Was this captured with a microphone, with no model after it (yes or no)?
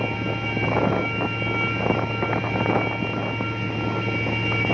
yes